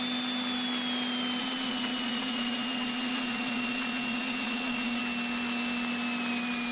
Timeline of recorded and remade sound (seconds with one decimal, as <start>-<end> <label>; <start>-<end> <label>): 0.0-1.4 recorded; 1.4-5.0 remade; 5.0-6.7 recorded